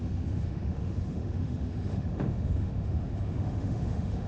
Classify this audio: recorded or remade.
remade